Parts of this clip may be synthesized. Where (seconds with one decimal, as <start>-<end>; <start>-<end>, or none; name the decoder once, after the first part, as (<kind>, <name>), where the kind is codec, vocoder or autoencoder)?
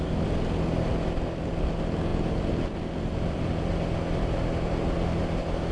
none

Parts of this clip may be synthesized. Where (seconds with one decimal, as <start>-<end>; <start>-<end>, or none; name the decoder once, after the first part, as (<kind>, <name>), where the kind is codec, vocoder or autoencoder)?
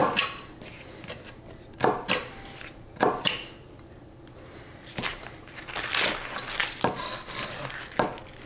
0.0-4.0 (vocoder, BigVGAN v2); 5.1-5.9